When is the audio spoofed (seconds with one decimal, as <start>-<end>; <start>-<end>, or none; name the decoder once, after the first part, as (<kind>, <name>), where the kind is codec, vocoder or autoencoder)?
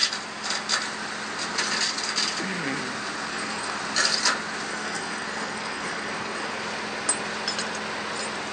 3.3-3.8 (codec, SNAC); 4.7-6.5